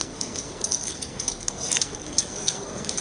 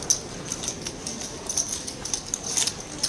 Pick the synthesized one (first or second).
first